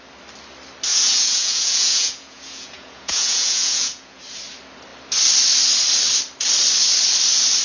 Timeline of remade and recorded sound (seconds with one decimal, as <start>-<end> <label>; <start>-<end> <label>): 0.0-0.9 recorded; 0.9-4.2 remade; 4.2-7.6 recorded